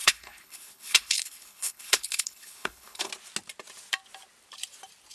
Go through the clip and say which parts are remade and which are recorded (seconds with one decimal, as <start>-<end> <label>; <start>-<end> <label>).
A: 0.0-3.1 remade; 3.1-5.1 recorded